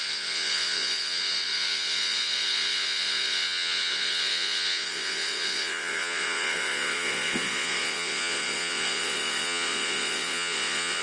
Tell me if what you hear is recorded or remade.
remade